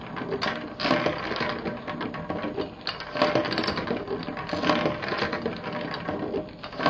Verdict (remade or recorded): recorded